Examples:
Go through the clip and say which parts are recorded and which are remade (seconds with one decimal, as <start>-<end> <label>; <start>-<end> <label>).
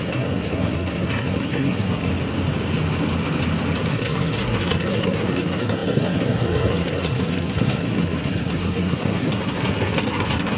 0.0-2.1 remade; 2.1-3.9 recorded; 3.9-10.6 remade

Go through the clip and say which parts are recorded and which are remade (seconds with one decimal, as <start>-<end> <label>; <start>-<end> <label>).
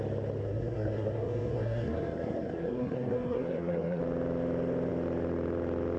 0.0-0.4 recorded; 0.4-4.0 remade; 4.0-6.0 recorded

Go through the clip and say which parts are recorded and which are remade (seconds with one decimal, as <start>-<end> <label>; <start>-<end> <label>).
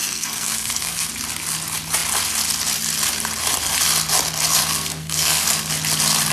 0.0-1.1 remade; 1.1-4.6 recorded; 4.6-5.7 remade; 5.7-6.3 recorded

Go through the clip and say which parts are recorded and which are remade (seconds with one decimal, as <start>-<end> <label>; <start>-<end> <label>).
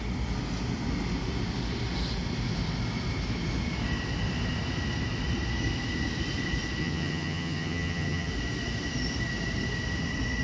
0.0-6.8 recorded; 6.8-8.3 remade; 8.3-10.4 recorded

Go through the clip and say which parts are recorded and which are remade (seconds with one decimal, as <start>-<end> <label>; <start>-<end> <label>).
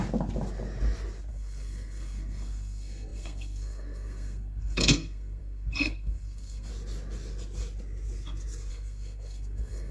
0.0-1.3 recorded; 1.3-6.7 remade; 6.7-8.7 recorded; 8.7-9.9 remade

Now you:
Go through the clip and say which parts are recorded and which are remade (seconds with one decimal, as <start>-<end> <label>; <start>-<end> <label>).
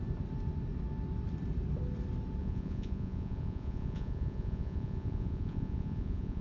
0.0-2.4 recorded; 2.4-6.4 remade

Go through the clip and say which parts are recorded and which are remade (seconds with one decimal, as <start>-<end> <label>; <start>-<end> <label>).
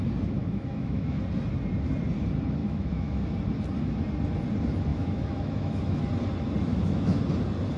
0.0-0.4 recorded; 0.4-1.2 remade; 1.2-2.6 recorded; 2.6-3.3 remade; 3.3-4.9 recorded; 4.9-6.0 remade; 6.0-6.7 recorded; 6.7-7.2 remade; 7.2-7.8 recorded